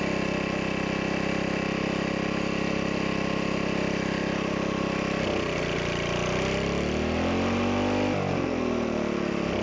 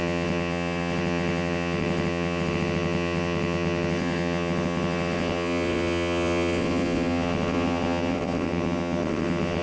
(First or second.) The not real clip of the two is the second